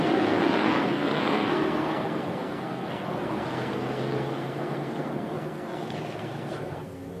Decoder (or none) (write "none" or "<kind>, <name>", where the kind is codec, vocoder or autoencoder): codec, SNAC